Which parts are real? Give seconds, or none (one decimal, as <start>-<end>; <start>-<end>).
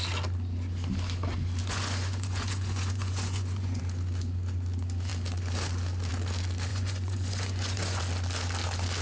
0.0-1.6; 3.8-6.7; 8.0-9.0